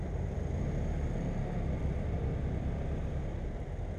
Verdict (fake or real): real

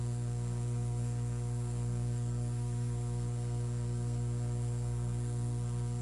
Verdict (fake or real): fake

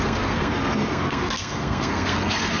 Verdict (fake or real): fake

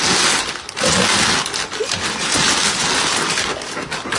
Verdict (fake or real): real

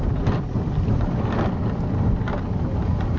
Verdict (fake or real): real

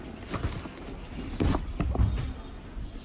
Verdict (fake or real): real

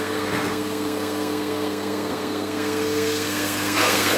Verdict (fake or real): fake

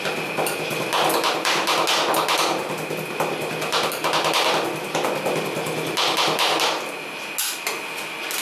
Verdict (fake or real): real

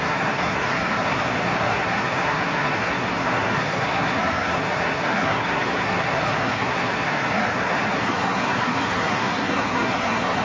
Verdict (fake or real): fake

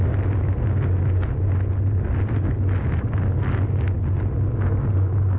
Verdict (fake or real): real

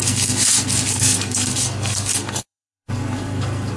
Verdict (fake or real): fake